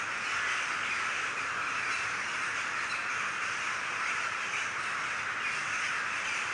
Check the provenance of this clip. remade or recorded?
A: recorded